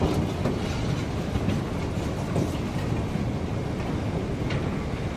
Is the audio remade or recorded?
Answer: recorded